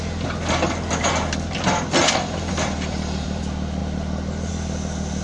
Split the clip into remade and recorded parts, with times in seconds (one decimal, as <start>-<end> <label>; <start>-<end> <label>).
0.0-2.0 recorded; 2.0-3.4 remade; 3.4-5.2 recorded